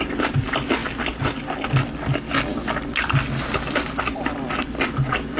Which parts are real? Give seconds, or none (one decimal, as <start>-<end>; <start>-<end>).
0.0-5.4